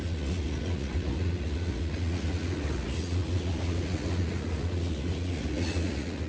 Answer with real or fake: fake